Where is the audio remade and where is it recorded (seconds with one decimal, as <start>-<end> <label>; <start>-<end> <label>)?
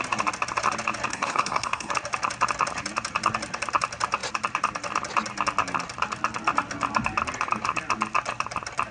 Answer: 0.0-1.1 recorded; 1.1-1.9 remade; 1.9-8.9 recorded